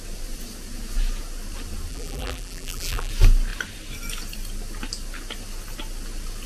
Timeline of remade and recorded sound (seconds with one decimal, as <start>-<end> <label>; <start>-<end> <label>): 0.0-1.9 recorded; 1.9-3.1 remade; 3.1-6.5 recorded